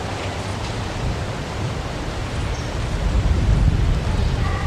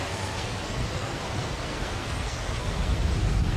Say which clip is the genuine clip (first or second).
first